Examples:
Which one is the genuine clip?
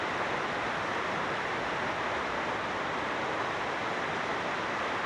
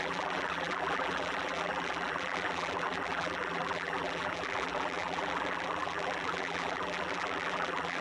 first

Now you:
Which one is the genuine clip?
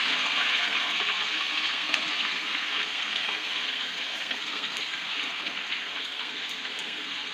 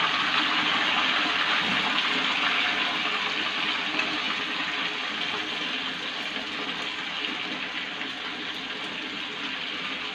second